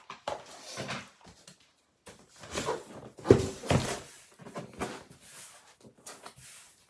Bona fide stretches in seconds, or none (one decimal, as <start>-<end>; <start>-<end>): 0.0-6.9